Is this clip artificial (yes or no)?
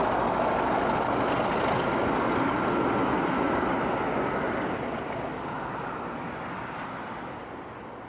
no